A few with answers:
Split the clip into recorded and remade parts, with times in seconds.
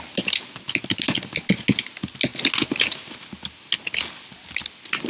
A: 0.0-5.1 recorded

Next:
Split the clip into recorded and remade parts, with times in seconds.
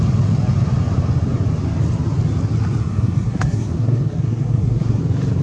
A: 0.0-2.8 recorded; 2.8-5.0 remade; 5.0-5.4 recorded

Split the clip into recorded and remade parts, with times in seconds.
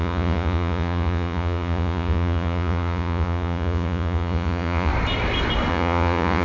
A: 0.0-4.9 remade; 4.9-5.7 recorded; 5.7-6.4 remade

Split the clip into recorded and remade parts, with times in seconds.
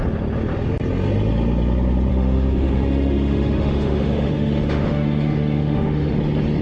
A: 0.0-2.1 recorded; 2.1-6.1 remade; 6.1-6.6 recorded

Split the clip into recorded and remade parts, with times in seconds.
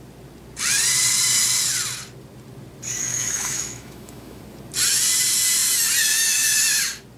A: 0.0-3.1 recorded; 3.1-4.4 remade; 4.4-7.2 recorded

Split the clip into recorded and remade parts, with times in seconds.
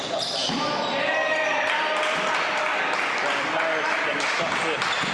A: 0.0-0.4 remade; 0.4-1.0 recorded; 1.0-2.7 remade; 2.7-3.6 recorded; 3.6-5.1 remade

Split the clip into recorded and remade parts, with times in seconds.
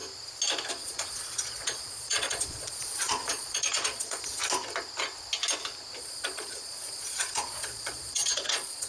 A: 0.0-0.7 recorded; 0.7-4.4 remade; 4.4-6.0 recorded; 6.0-8.9 remade